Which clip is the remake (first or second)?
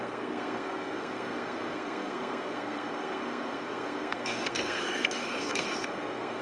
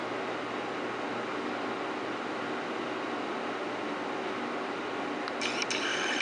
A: first